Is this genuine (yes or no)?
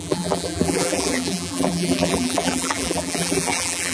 no